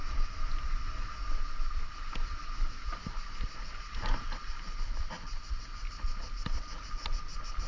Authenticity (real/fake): real